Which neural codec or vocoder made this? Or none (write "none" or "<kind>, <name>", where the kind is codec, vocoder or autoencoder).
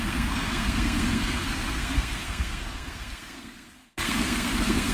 codec, SNAC